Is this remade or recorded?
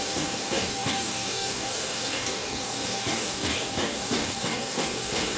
remade